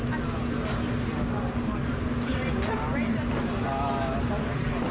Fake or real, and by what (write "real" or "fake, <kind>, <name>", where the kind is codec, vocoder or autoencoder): real